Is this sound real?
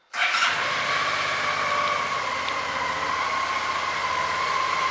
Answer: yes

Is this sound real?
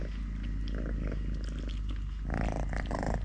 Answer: yes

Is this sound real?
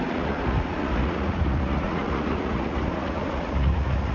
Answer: no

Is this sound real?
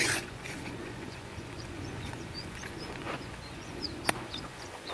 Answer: no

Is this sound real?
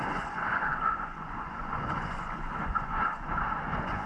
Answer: no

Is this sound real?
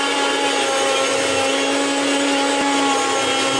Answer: yes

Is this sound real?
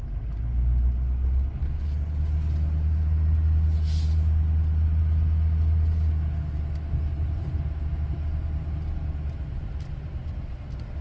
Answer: yes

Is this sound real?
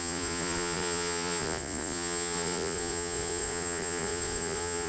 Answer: no